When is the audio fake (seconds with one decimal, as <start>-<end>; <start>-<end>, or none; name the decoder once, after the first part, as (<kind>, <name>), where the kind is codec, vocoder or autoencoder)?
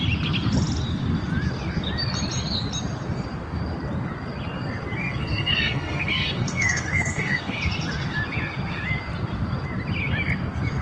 5.0-7.6 (codec, SNAC)